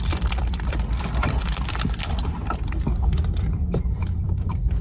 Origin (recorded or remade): remade